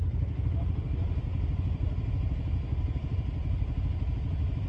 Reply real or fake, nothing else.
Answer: real